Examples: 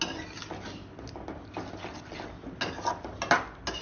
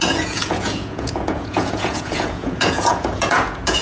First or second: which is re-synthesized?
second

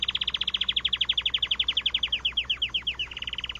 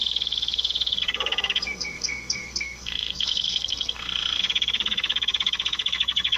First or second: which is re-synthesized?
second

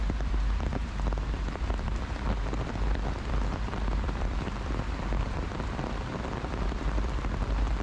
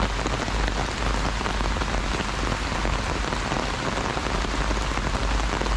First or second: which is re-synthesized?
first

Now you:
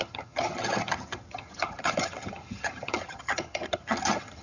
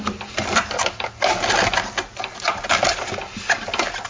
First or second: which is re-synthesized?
first